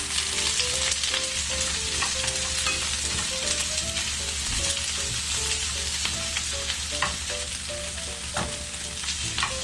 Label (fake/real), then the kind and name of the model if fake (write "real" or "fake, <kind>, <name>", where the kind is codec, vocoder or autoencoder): real